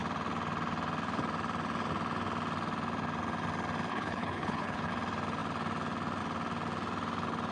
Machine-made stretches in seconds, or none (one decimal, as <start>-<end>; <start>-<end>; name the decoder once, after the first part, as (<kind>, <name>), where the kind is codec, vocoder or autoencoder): 3.9-4.9 (codec, HILCodec)